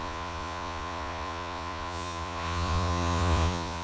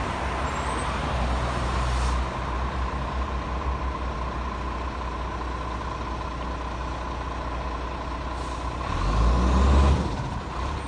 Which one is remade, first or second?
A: first